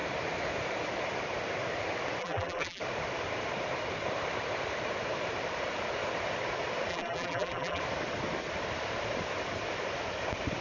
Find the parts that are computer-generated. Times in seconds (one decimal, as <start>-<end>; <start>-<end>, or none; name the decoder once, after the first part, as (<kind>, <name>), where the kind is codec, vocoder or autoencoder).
2.2-2.8 (vocoder, BigVGAN v2); 6.9-7.8